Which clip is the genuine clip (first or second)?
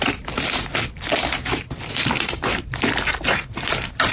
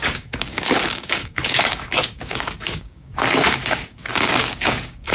first